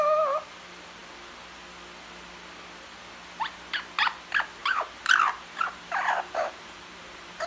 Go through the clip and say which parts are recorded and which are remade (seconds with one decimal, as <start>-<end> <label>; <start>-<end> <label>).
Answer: 0.0-4.6 recorded; 4.6-7.5 remade